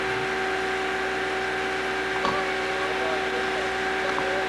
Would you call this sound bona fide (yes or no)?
yes